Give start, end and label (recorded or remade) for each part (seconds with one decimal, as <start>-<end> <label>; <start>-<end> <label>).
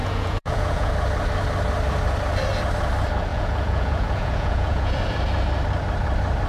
0.0-0.9 remade; 0.9-3.3 recorded; 3.3-5.0 remade; 5.0-6.5 recorded